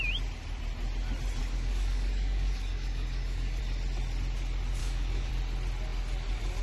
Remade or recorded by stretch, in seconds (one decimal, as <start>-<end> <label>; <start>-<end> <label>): 0.0-1.4 recorded; 1.4-3.6 remade; 3.6-4.8 recorded; 4.8-5.3 remade; 5.3-6.6 recorded